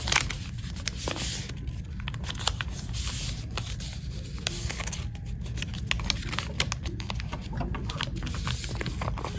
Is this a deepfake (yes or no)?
no